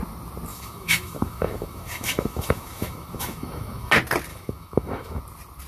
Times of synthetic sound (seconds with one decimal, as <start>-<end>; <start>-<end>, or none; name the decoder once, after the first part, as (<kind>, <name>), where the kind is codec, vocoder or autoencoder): 0.5-3.9 (autoencoder, DAC-VAE); 4.3-5.2